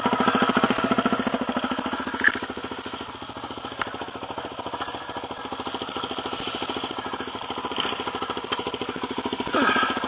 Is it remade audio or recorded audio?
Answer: recorded